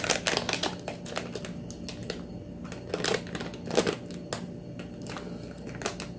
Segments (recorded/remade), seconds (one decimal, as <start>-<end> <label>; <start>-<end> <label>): 0.0-6.2 recorded